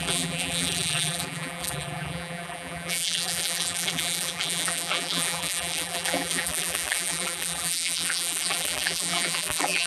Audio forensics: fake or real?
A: fake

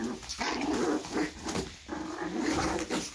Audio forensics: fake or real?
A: real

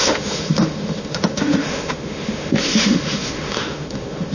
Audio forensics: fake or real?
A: fake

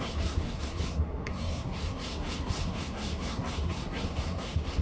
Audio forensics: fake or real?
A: fake